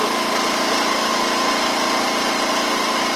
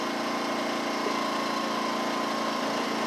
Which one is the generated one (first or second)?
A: first